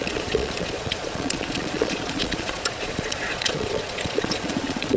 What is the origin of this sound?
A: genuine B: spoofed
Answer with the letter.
B